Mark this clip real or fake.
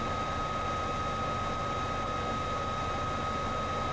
real